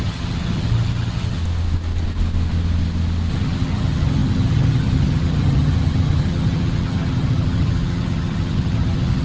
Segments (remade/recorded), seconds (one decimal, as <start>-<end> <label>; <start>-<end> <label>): 0.0-1.4 remade; 1.4-3.3 recorded; 3.3-9.2 remade